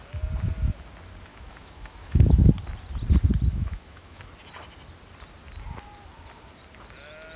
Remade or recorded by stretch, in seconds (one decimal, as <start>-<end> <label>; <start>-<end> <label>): 0.0-1.3 recorded; 1.3-2.5 remade; 2.5-3.5 recorded; 3.5-4.2 remade; 4.2-7.4 recorded